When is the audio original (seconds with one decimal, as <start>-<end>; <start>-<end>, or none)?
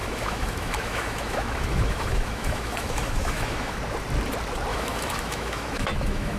3.8-4.7